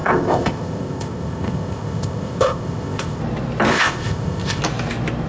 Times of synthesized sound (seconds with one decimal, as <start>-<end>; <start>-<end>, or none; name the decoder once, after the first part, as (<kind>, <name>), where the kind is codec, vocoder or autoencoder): 0.0-3.2 (codec, ZipCodec); 3.7-4.6